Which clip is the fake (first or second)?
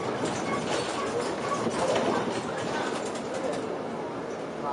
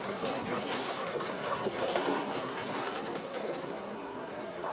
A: second